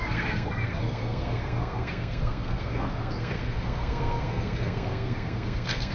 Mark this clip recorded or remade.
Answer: remade